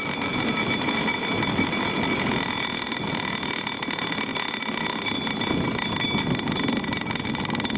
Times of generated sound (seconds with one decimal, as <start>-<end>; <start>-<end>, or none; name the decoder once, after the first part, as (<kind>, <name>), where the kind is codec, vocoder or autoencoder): none